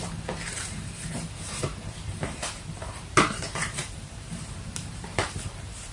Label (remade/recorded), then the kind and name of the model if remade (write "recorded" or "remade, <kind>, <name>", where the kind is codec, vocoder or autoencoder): remade, vocoder, BigVGAN v2